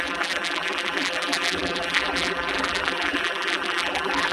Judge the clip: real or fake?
fake